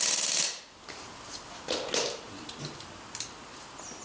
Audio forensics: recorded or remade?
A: recorded